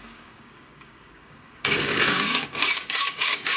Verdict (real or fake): fake